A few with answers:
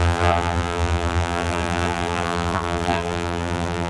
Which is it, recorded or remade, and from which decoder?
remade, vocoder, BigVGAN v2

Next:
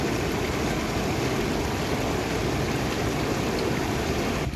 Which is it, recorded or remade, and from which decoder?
recorded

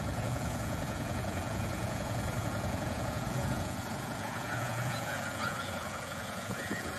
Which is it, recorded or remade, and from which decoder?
remade, vocoder, Vocos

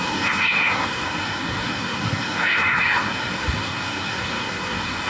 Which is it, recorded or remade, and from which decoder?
remade, codec, SNAC